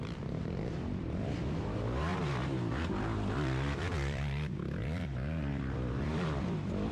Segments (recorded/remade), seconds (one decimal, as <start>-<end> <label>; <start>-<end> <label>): 0.0-2.1 remade; 2.1-3.0 recorded; 3.0-6.9 remade